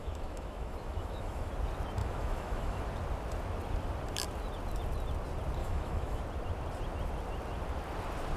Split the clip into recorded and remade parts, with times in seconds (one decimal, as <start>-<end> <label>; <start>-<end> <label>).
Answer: 0.0-1.5 remade; 1.5-2.0 recorded; 2.0-2.8 remade; 2.8-5.6 recorded; 5.6-6.2 remade; 6.2-8.4 recorded